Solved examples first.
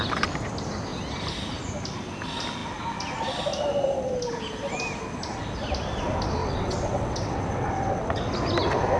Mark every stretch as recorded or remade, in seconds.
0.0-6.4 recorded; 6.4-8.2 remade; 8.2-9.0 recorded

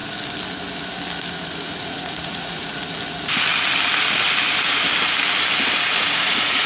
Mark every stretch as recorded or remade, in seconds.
0.0-1.3 recorded; 1.3-2.8 remade; 2.8-6.0 recorded; 6.0-6.7 remade